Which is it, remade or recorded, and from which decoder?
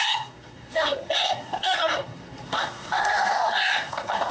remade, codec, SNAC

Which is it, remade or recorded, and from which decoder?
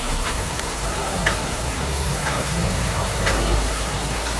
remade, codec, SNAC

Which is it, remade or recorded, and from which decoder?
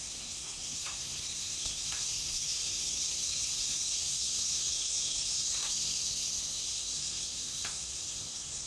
remade, codec, SNAC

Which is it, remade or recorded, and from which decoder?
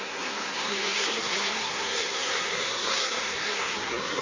remade, codec, SNAC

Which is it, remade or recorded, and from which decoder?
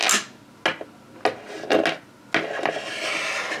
recorded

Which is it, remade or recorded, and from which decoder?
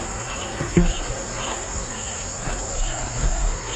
remade, codec, SNAC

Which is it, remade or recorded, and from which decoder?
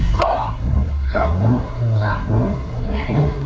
remade, codec, SNAC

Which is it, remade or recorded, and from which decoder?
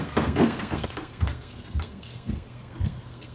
remade, codec, SNAC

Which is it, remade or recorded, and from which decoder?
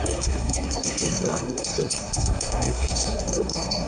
remade, codec, SNAC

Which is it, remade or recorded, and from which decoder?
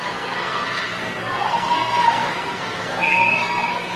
remade, codec, SNAC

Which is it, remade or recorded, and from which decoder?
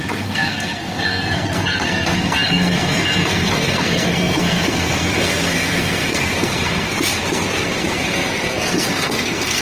remade, codec, SNAC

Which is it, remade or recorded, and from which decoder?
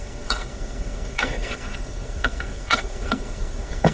remade, codec, SNAC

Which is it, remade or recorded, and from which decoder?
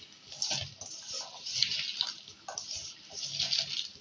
recorded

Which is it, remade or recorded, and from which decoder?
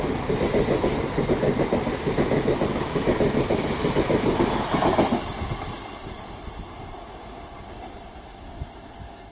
recorded